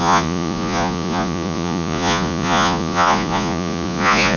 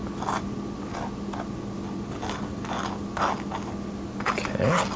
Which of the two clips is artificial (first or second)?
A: first